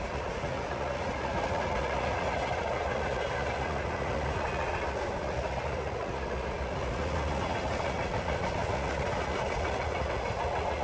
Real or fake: fake